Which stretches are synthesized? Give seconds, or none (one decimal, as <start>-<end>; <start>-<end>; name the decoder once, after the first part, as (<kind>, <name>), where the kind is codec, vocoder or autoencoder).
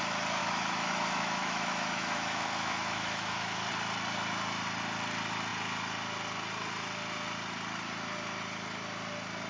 0.4-3.7 (autoencoder, DAC-VAE)